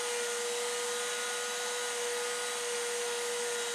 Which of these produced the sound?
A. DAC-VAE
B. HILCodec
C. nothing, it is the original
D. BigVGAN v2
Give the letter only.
C